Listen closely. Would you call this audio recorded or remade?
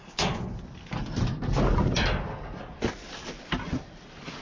recorded